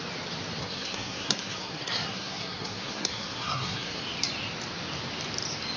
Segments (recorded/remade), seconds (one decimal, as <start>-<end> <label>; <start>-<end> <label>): 0.0-0.6 recorded; 0.6-4.0 remade; 4.0-5.8 recorded